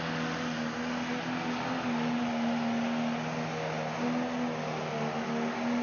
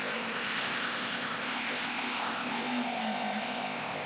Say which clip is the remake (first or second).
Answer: second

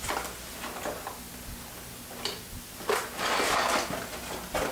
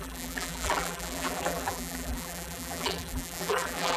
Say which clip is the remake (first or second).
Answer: second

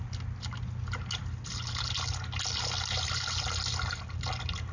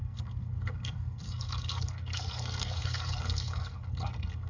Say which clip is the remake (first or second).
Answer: second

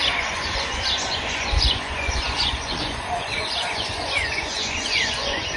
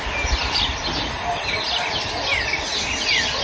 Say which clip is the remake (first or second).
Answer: first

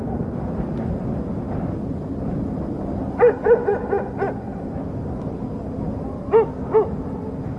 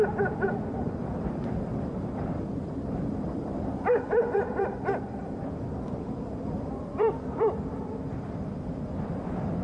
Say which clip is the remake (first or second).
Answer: second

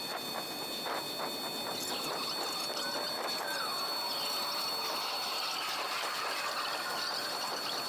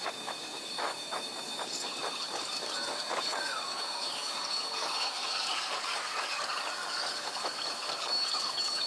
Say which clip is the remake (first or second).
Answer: second